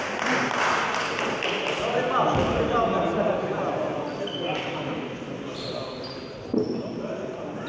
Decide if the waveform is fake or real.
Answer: real